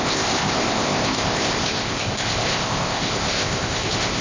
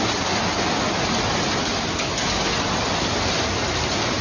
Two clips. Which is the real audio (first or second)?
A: second